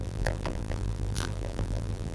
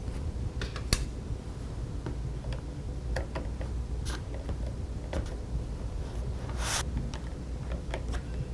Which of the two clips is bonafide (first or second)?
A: second